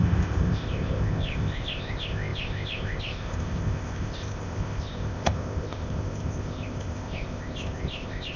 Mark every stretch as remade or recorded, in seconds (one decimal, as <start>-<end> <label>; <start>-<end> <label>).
0.0-8.4 remade